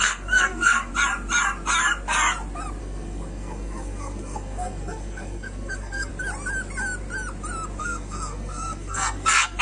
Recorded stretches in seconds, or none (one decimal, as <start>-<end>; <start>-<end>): 0.9-2.8; 6.1-7.8